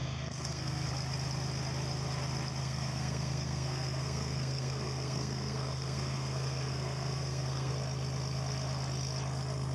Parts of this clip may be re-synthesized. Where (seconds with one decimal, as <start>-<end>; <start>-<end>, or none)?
0.0-0.9; 2.6-7.7